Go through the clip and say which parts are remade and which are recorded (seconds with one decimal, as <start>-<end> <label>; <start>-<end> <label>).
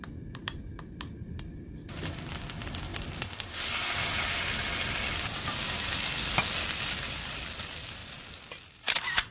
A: 0.0-0.4 recorded; 0.4-1.9 remade; 1.9-2.9 recorded; 2.9-4.4 remade; 4.4-8.0 recorded; 8.0-9.3 remade